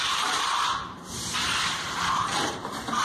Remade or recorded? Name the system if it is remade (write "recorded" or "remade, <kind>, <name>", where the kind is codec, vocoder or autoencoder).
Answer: remade, vocoder, BigVGAN v2